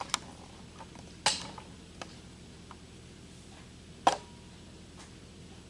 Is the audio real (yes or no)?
yes